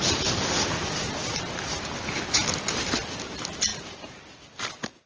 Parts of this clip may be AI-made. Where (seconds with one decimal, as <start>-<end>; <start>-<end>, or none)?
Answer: none